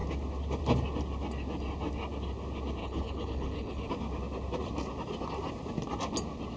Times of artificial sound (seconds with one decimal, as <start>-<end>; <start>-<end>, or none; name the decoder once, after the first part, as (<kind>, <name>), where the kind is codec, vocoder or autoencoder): 2.8-3.9 (codec, HILCodec)